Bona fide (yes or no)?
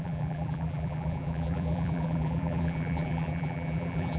no